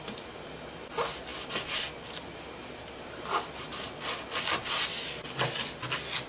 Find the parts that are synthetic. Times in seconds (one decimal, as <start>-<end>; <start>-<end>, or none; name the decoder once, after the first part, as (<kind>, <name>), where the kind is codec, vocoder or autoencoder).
none